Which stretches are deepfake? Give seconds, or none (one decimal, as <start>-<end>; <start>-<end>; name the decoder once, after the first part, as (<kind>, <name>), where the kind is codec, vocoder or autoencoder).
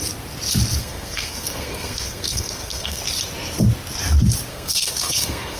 0.8-3.0 (codec, SNAC); 4.5-5.6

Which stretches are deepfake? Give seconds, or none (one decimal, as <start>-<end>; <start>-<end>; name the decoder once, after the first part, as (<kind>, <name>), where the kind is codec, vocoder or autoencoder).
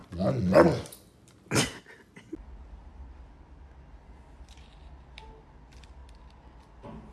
none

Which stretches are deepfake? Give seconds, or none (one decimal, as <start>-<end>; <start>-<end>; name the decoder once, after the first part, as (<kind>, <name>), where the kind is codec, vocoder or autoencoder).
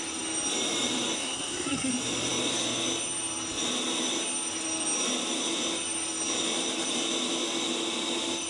1.2-1.9 (codec, SNAC)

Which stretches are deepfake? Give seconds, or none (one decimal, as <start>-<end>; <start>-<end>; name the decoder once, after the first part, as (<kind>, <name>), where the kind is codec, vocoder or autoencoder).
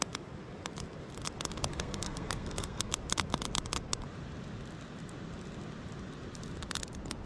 1.7-2.9 (codec, SNAC)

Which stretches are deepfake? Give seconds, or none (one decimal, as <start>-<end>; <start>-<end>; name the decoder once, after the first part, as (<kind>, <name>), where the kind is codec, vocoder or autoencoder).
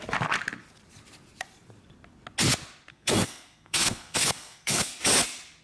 2.9-4.9 (codec, SNAC)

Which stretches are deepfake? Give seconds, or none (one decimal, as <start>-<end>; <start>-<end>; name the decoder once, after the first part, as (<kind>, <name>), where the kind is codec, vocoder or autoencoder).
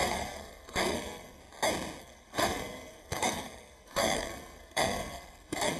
0.0-1.4 (codec, SNAC); 2.0-5.8